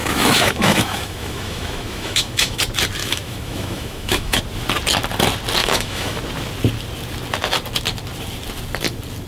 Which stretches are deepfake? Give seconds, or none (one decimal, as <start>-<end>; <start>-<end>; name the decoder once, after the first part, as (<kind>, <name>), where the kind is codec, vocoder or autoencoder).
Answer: 0.0-2.6 (autoencoder, DAC-VAE); 3.0-4.4; 5.6-6.2